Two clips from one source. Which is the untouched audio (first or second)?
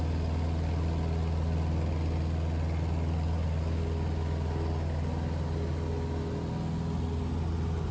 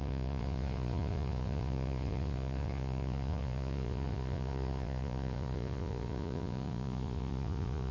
first